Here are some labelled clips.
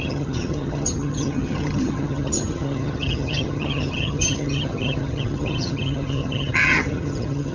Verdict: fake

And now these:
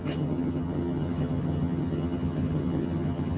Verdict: fake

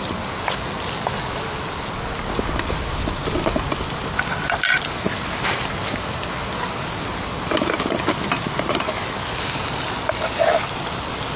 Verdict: real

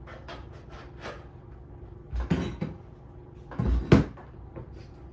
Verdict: real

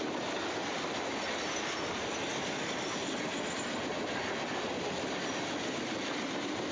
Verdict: real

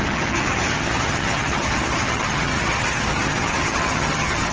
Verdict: fake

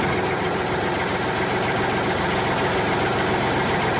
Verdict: real